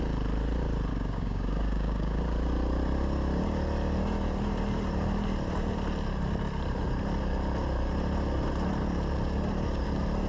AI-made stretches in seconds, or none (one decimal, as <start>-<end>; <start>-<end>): 0.9-2.2